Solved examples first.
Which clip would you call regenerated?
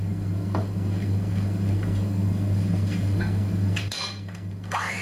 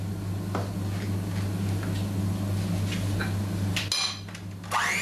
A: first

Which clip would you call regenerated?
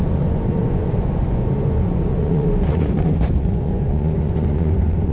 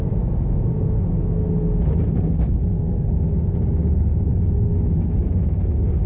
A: first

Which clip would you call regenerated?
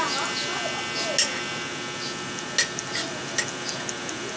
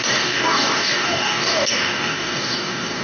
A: second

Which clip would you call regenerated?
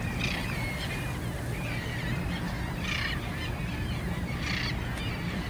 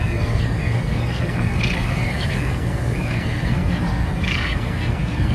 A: second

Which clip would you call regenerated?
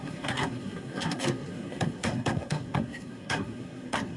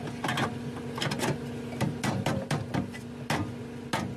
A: first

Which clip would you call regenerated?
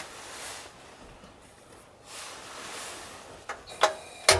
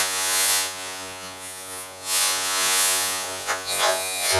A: second